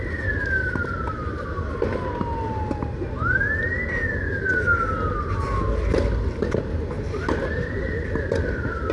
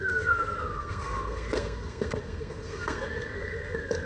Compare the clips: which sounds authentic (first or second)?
first